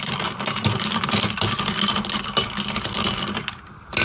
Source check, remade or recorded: recorded